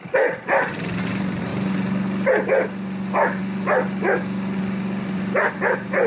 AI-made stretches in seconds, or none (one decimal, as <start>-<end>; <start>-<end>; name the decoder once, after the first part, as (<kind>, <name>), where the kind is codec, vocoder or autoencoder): none